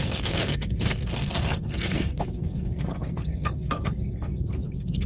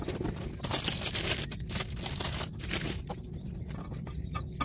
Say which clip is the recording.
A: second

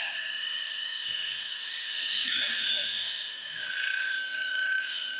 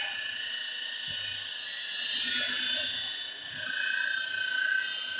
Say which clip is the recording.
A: second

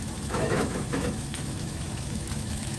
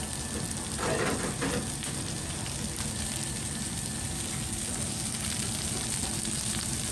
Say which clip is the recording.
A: second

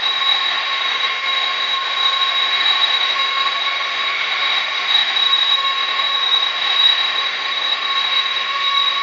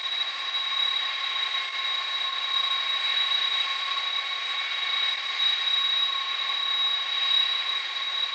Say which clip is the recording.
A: second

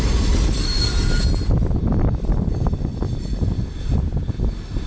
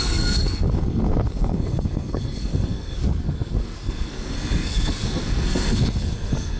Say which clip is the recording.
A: first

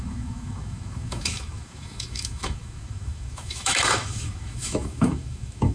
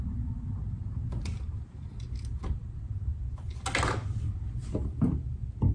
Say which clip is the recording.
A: second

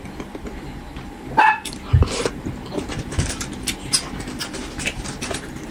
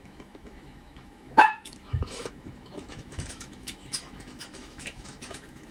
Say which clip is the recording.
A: first